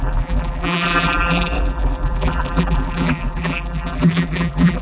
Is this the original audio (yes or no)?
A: no